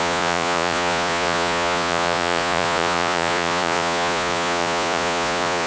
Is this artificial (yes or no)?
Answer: yes